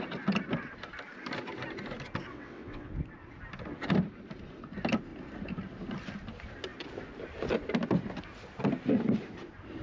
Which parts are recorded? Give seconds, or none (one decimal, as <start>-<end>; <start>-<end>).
0.0-2.3; 2.9-9.8